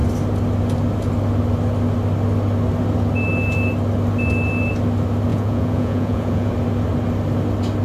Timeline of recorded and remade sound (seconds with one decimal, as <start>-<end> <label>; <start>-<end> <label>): 0.0-5.3 recorded; 5.3-6.5 remade; 6.5-7.8 recorded